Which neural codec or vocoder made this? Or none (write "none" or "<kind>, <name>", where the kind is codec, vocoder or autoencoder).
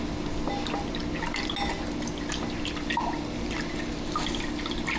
none